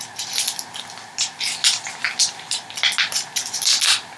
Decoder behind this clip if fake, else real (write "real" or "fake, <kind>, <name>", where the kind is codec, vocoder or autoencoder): real